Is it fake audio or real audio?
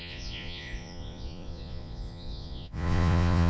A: fake